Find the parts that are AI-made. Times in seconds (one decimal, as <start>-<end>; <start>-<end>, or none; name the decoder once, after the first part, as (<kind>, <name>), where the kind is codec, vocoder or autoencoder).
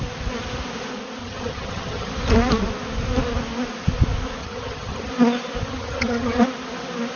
1.2-2.1 (vocoder, HiFi-GAN); 4.4-5.1; 5.7-6.4